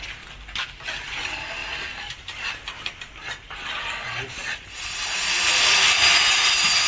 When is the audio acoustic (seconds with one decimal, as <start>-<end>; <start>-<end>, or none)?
0.0-1.6; 3.5-4.4; 5.9-6.9